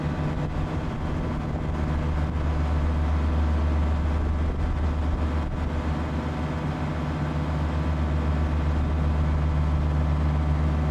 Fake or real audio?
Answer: real